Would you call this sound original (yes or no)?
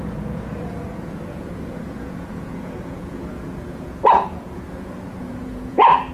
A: no